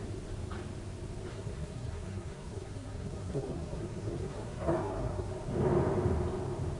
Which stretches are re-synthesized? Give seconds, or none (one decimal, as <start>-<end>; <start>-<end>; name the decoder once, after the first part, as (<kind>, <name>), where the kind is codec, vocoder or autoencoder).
1.3-5.3 (codec, SNAC)